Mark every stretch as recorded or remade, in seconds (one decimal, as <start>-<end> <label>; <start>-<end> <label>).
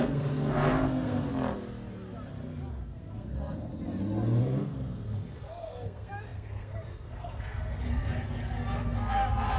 0.0-1.3 remade; 1.3-2.7 recorded; 2.7-3.7 remade; 3.7-4.4 recorded; 4.4-9.6 remade